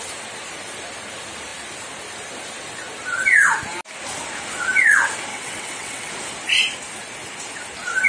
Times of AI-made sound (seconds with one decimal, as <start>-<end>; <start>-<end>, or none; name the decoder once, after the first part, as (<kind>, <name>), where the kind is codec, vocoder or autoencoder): 5.3-6.1 (vocoder, WaveNeXt)